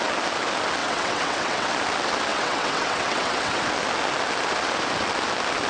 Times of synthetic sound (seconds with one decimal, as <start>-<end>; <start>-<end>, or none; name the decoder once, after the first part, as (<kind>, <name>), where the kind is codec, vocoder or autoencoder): 0.8-1.7 (vocoder, WaveNeXt); 2.3-3.6